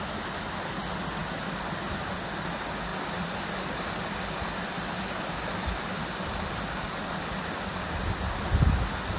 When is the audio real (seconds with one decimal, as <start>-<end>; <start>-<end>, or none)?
0.0-9.2